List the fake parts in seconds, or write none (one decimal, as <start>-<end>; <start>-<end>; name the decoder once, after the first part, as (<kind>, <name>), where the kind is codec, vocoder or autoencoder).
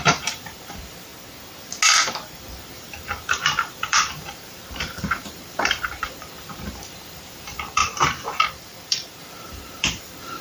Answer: 0.0-1.1 (vocoder, BigVGAN v2); 2.6-10.4